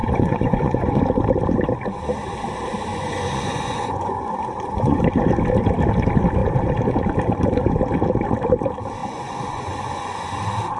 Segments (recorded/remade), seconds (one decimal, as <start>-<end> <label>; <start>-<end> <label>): 0.0-1.0 remade; 1.0-2.9 recorded; 2.9-5.0 remade; 5.0-9.0 recorded; 9.0-10.3 remade; 10.3-10.8 recorded